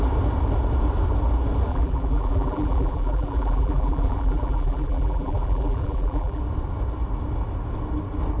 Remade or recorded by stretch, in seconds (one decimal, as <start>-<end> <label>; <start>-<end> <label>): 0.0-1.7 recorded; 1.7-6.4 remade; 6.4-8.4 recorded